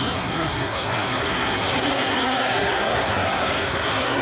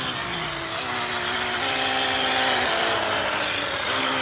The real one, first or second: second